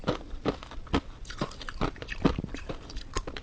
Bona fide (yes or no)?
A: no